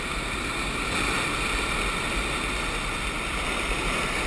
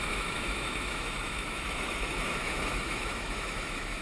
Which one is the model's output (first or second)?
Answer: second